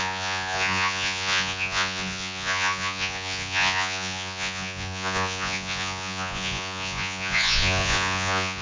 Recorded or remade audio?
remade